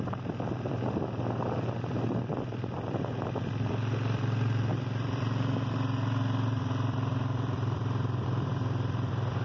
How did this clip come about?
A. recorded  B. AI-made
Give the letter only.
B